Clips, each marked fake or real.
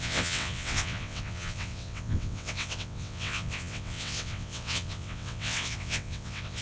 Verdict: fake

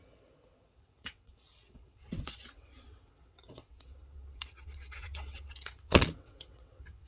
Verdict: fake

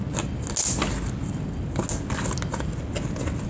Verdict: real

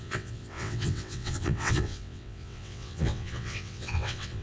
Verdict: fake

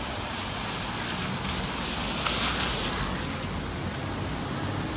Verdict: real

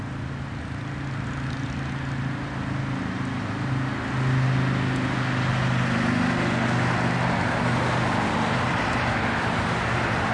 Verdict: real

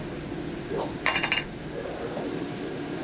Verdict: real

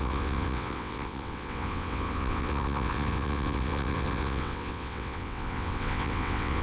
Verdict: fake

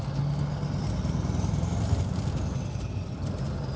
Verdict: real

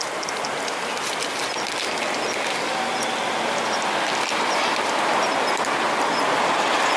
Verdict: real